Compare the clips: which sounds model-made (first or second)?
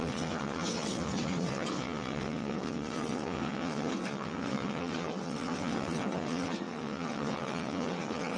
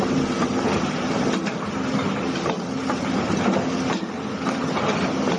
first